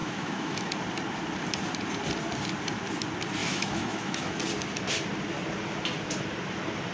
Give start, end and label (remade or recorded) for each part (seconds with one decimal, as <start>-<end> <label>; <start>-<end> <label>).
0.0-0.7 remade; 0.7-3.4 recorded; 3.4-4.4 remade; 4.4-6.9 recorded